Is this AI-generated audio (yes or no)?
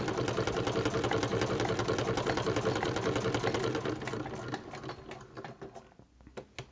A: no